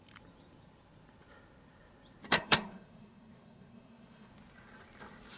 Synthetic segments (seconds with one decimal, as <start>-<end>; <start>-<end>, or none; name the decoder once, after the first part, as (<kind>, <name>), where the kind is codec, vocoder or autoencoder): 2.3-4.3 (codec, SNAC)